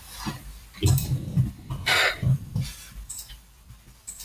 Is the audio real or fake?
fake